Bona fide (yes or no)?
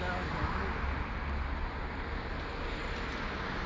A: yes